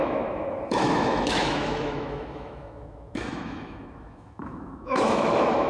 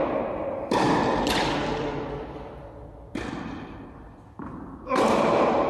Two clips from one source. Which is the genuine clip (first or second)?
second